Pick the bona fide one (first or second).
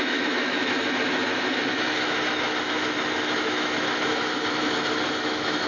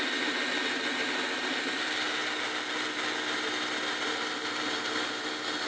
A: second